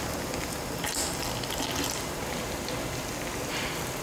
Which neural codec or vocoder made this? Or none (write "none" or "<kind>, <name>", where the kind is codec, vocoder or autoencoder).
none